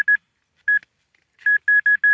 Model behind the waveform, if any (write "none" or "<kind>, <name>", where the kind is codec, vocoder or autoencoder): none